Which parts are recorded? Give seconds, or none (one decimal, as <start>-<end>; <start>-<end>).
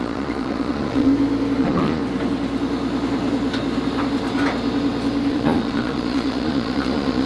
1.1-1.6; 2.0-5.3